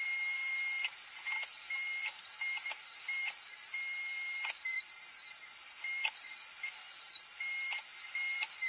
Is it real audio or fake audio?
fake